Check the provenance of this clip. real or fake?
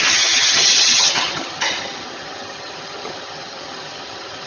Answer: fake